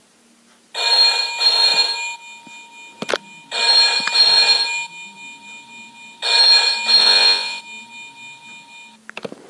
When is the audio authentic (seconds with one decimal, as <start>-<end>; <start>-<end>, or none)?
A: 0.0-7.0; 7.6-9.5